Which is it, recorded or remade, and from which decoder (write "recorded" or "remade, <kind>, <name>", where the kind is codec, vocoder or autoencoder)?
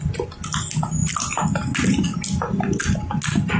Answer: recorded